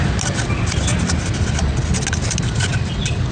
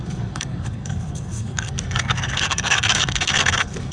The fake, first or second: second